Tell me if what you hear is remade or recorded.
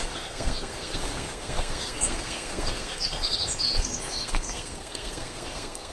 remade